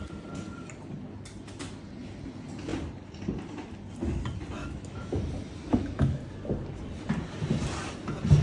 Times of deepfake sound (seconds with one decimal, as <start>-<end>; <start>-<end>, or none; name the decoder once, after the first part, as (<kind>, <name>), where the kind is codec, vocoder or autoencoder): 4.6-5.2 (autoencoder, DAC-VAE); 5.7-6.2